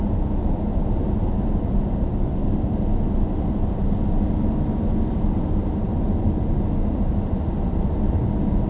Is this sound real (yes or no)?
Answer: yes